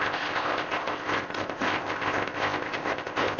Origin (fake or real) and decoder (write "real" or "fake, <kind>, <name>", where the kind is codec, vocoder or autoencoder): fake, codec, ZipCodec